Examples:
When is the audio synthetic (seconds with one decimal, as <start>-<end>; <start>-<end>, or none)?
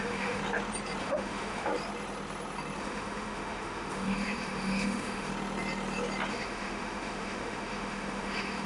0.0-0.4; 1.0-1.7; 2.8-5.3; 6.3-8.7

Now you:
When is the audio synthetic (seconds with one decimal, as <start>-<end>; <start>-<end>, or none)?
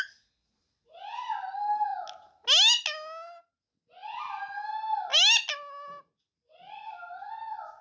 none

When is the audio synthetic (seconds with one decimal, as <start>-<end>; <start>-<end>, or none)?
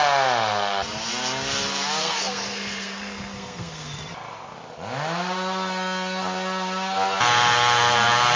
2.0-4.0